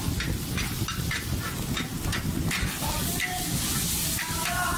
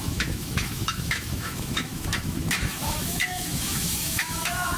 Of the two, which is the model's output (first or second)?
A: second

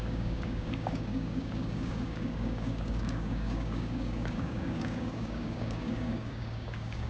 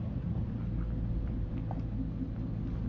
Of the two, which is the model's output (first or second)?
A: first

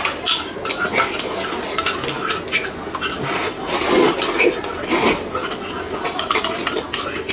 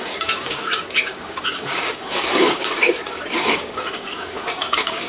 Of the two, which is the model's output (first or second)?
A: second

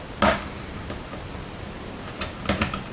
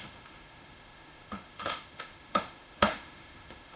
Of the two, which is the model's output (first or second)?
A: second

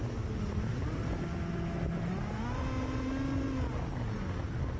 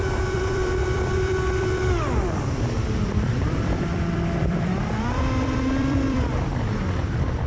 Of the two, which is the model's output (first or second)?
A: second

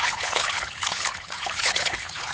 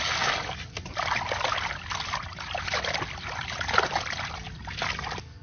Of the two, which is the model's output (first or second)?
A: first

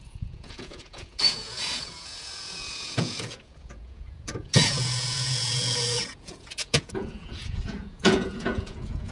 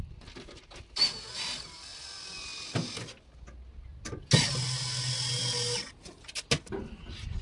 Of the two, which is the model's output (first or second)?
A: first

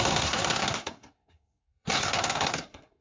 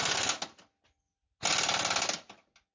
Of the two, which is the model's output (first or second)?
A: first